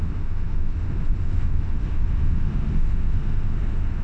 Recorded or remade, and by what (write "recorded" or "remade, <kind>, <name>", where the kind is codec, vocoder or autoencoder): remade, autoencoder, DAC-VAE